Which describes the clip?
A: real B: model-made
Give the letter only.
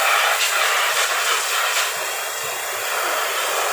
B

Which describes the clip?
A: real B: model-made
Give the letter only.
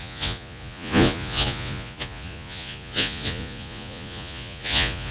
B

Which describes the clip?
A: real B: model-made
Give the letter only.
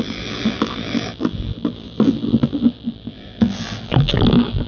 B